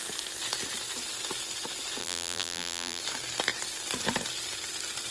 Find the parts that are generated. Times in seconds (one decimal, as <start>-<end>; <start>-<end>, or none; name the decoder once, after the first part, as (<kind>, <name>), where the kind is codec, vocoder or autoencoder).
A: 2.0-3.0 (vocoder, BigVGAN v2)